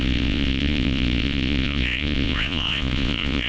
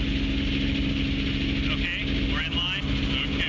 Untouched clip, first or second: second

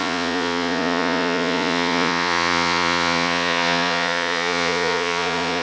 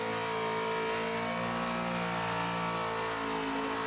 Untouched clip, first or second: second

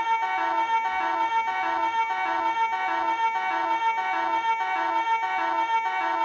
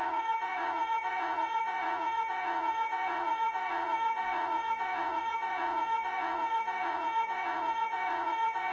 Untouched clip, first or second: first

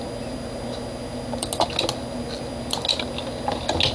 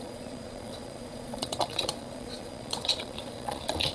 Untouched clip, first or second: first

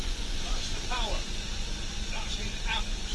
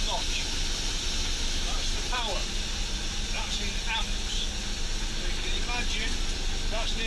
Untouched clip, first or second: second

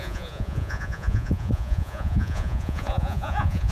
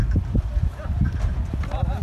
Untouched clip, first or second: second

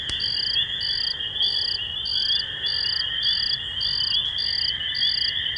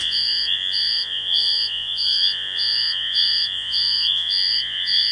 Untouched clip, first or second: first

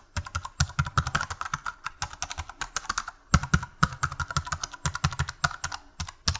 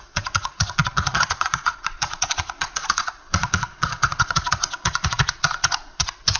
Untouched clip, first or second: first